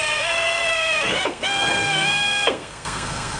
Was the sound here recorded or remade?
remade